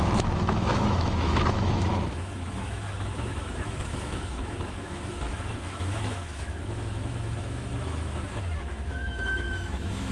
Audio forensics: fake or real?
fake